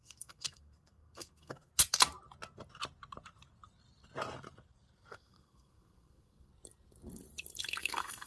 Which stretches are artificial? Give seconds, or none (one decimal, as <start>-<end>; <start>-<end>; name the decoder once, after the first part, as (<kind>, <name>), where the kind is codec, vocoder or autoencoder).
0.0-1.7 (codec, SNAC); 5.1-6.5; 7.8-8.3